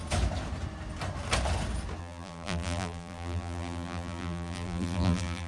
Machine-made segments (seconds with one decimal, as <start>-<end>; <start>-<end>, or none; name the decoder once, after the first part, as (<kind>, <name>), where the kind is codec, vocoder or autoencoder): 2.0-5.5 (vocoder, BigVGAN v2)